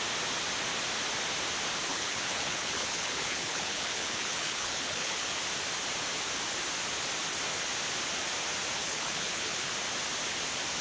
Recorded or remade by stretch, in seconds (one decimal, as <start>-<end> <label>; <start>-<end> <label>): 0.0-1.9 recorded; 1.9-5.4 remade; 5.4-8.8 recorded; 8.8-9.7 remade; 9.7-10.8 recorded